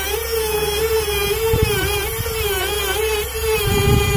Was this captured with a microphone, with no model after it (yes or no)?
no